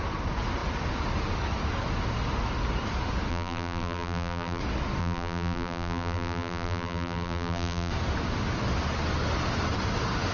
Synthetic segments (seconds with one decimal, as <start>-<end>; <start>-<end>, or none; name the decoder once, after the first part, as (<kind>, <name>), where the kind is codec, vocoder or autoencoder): 3.3-4.6 (vocoder, BigVGAN v2); 5.0-7.9